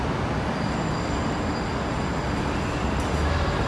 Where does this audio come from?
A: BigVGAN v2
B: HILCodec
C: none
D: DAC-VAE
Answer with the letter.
C